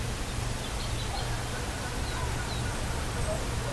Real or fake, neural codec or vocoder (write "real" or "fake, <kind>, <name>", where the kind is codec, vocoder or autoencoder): real